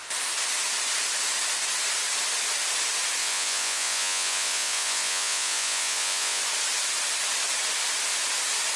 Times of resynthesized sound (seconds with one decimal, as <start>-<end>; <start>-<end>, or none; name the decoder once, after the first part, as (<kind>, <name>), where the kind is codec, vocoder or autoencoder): 3.2-6.4 (vocoder, Vocos)